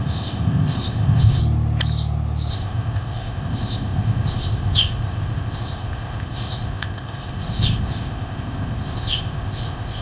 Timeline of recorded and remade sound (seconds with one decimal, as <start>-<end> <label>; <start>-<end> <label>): 0.0-1.4 remade; 1.4-2.5 recorded; 2.5-10.0 remade

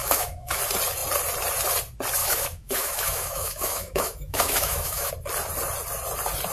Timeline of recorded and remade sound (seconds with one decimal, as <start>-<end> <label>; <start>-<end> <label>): 0.0-0.6 remade; 0.6-2.2 recorded; 2.2-5.1 remade; 5.1-6.5 recorded

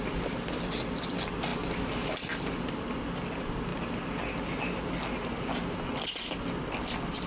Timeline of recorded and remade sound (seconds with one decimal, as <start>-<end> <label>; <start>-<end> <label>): 0.0-7.3 recorded

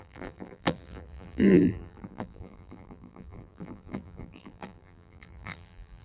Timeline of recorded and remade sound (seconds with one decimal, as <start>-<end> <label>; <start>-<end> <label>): 0.0-6.0 remade

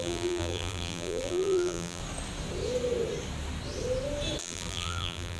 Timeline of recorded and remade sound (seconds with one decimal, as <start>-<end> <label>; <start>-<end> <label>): 0.0-2.0 remade; 2.0-4.4 recorded; 4.4-5.4 remade

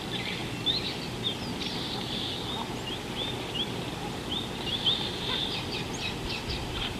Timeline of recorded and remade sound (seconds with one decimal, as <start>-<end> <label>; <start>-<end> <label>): 0.0-7.0 recorded

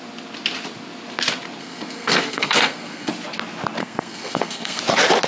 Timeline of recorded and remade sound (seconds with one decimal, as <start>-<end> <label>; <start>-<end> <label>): 0.0-1.6 recorded; 1.6-3.1 remade; 3.1-3.8 recorded; 3.8-4.8 remade; 4.8-5.3 recorded